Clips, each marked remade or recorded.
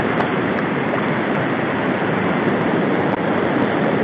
remade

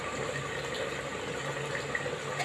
recorded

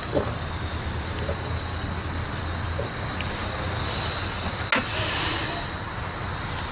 recorded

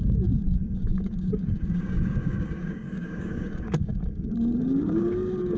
remade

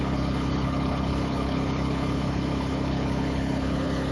remade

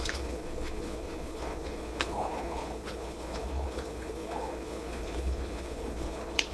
remade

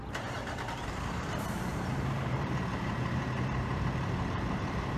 remade